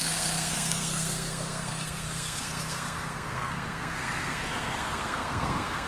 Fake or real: fake